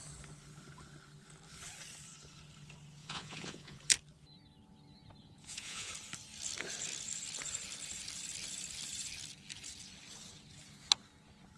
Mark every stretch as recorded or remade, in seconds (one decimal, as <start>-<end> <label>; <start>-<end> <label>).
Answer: 0.0-3.0 recorded; 3.0-3.8 remade; 3.8-5.2 recorded; 5.2-5.9 remade; 5.9-11.6 recorded